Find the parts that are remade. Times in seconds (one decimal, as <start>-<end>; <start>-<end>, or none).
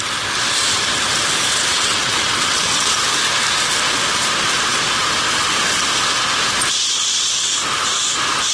1.7-2.9